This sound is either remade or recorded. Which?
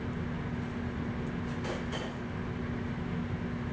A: recorded